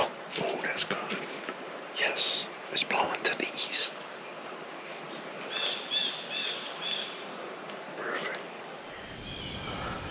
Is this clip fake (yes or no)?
no